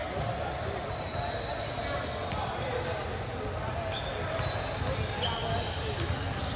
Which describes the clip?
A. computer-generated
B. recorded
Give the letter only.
B